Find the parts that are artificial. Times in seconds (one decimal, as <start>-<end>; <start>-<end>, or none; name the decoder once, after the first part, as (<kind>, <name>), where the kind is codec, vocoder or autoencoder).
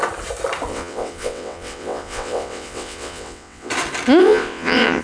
0.7-3.7 (vocoder, WaveNeXt); 4.2-5.0